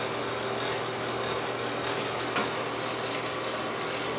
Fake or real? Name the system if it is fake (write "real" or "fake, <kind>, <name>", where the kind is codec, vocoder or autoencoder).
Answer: real